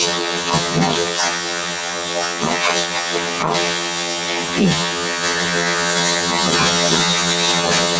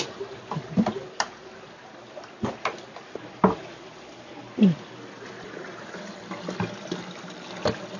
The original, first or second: second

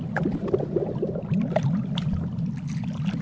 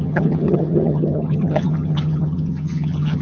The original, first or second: first